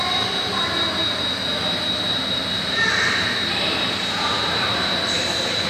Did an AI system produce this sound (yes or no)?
yes